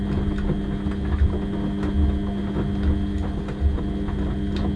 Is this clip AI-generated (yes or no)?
no